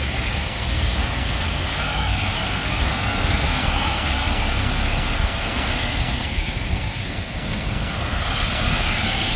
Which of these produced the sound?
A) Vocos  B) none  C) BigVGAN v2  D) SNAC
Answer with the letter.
D